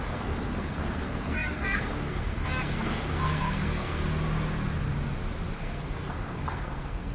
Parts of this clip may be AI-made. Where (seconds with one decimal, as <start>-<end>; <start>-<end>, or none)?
0.0-4.0; 5.5-7.1